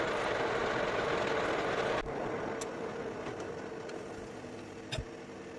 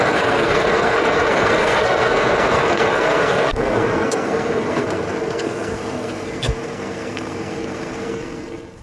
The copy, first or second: second